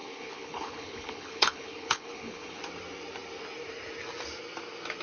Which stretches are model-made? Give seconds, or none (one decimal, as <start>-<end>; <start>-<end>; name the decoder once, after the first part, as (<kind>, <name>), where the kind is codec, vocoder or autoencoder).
0.0-2.6 (codec, HILCodec)

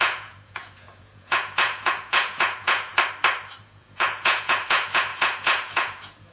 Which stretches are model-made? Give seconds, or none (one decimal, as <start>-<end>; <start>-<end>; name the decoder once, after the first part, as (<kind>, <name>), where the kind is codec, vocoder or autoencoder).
0.0-2.9 (vocoder, Vocos); 3.6-6.3

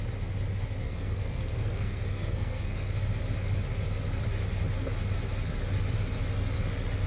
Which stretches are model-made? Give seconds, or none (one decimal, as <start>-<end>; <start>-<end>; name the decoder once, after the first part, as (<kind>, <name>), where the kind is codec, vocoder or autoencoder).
0.8-2.9 (codec, SNAC)

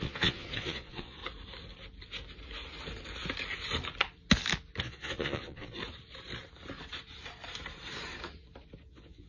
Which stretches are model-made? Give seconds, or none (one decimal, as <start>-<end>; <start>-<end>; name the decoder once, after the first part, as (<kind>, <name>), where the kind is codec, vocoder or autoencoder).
0.0-1.2 (vocoder, Vocos); 4.8-5.8; 8.9-9.3

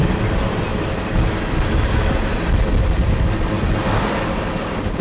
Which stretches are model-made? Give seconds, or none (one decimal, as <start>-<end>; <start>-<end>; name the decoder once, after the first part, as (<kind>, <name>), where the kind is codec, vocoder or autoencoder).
none

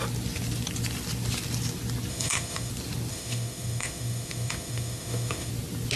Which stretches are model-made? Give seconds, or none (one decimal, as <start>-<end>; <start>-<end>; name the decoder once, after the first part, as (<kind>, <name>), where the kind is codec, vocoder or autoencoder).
2.1-2.7 (autoencoder, DAC-VAE); 3.1-5.5

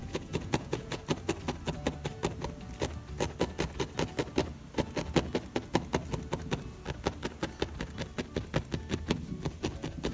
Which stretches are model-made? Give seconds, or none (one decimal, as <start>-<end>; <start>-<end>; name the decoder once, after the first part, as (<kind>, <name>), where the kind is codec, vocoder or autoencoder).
0.0-1.0 (vocoder, Vocos)